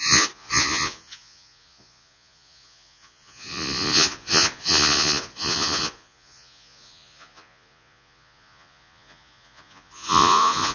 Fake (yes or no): yes